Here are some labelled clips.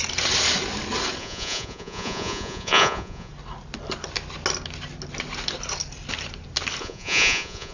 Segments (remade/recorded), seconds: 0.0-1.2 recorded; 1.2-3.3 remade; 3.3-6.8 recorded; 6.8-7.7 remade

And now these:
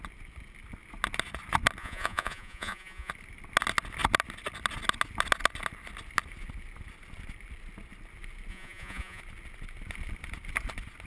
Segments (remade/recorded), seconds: 0.0-1.8 recorded; 1.8-3.1 remade; 3.1-8.5 recorded; 8.5-9.2 remade; 9.2-11.1 recorded